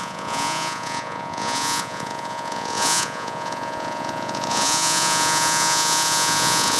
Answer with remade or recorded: remade